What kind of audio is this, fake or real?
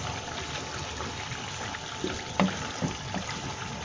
real